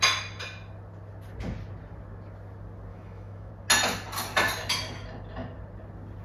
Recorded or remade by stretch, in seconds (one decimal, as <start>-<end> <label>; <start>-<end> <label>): 0.0-2.9 recorded; 2.9-3.5 remade; 3.5-6.2 recorded